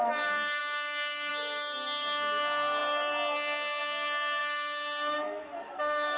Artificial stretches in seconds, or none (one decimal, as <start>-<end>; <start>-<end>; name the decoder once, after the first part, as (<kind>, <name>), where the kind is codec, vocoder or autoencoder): 0.0-6.2 (codec, SNAC)